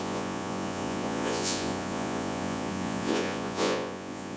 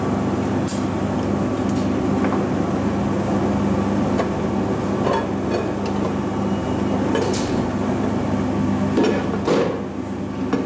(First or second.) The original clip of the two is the second